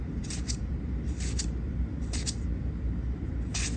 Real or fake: fake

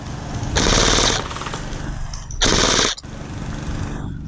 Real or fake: real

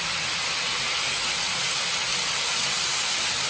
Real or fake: real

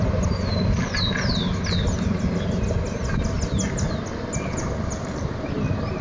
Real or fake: real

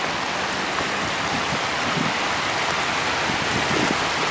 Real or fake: real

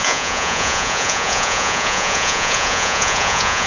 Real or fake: fake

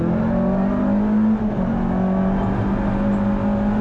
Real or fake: real